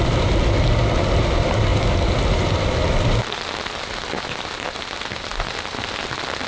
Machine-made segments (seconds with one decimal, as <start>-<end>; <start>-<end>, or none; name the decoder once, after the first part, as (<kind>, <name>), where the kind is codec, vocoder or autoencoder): none